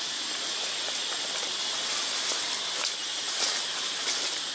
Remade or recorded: recorded